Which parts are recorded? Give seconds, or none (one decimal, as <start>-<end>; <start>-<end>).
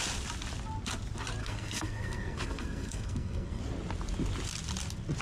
0.0-1.4; 3.6-5.2